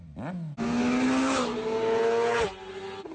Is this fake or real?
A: real